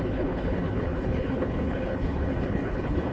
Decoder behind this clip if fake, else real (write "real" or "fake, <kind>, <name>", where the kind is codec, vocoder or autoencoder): fake, codec, HILCodec